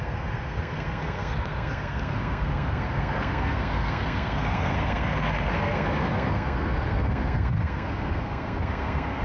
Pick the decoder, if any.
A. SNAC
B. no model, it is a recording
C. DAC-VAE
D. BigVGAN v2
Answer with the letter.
A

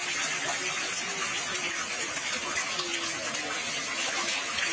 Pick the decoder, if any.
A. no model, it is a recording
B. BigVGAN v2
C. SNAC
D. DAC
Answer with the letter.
A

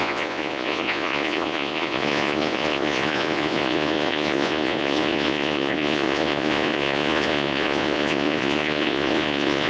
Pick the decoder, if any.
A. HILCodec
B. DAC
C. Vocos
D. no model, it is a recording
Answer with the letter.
C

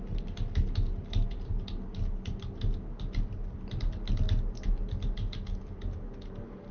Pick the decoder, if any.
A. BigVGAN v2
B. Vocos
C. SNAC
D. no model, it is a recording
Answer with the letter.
D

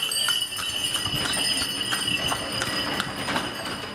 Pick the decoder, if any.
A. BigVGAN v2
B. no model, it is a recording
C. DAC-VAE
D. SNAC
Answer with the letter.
B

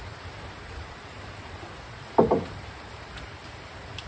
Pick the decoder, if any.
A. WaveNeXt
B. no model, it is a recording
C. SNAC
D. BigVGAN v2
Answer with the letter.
D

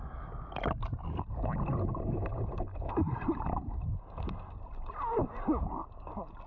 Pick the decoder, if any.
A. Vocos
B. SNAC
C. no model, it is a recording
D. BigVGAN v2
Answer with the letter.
C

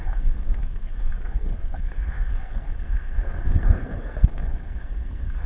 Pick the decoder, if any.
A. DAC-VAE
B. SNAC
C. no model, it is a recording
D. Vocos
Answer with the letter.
B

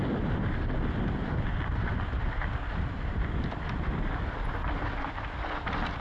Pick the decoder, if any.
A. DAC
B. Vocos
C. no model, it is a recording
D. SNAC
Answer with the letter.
C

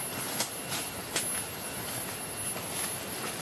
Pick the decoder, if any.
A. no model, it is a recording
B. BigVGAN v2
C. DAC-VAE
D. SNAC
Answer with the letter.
A